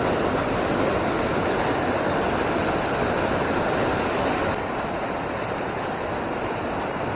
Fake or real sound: real